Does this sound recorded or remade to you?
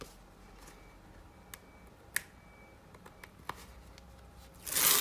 recorded